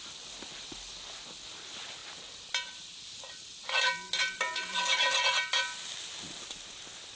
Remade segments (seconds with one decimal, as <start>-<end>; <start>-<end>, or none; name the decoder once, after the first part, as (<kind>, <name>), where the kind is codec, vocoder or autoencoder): none